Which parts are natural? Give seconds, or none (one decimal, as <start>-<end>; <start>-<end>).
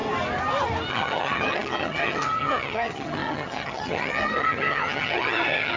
0.0-0.9